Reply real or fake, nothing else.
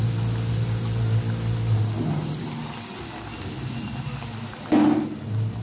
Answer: real